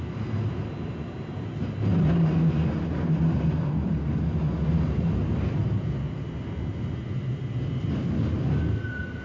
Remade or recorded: recorded